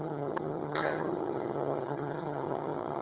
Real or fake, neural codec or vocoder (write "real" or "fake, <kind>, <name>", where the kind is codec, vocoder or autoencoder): fake, vocoder, HiFi-GAN